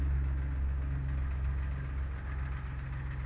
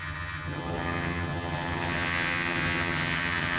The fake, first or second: second